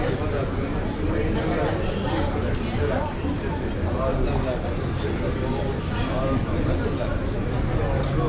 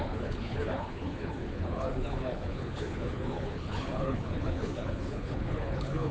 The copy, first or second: second